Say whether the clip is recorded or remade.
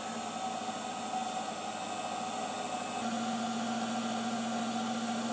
recorded